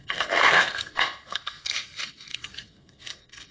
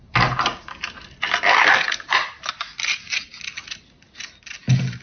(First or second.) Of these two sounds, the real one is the second